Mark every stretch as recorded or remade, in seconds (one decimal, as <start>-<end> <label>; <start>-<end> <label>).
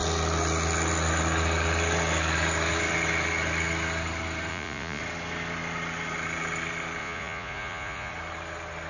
0.0-4.5 recorded; 4.5-5.0 remade; 5.0-7.0 recorded; 7.0-8.1 remade; 8.1-8.9 recorded